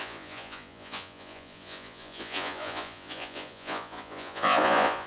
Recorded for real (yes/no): no